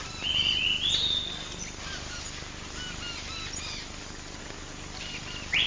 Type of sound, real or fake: real